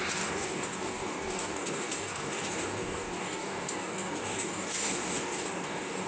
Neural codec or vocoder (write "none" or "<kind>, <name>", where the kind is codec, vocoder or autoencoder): codec, DAC